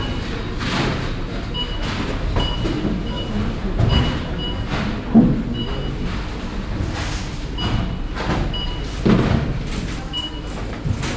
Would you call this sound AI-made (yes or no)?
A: no